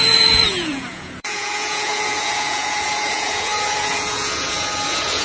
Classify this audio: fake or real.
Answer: fake